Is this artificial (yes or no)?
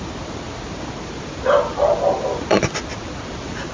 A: no